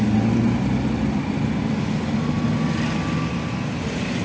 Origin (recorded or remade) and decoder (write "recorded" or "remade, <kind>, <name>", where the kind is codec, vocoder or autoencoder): recorded